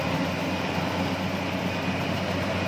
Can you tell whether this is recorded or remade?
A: recorded